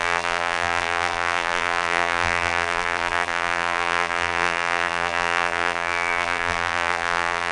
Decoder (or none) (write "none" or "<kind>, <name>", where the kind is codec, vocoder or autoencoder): vocoder, BigVGAN v2